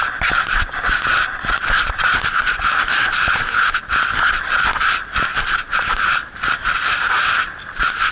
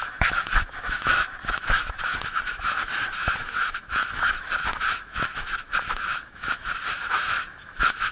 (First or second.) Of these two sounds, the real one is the first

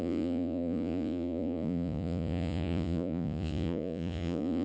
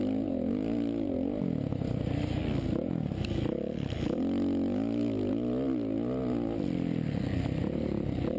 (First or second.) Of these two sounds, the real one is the second